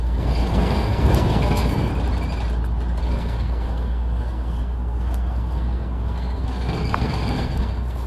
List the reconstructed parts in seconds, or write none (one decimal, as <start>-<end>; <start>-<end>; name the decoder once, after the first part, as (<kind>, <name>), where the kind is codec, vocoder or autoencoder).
0.0-1.9 (codec, SNAC); 3.0-8.1